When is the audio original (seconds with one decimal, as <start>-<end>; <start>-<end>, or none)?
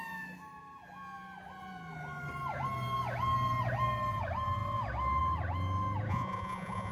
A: 0.0-6.1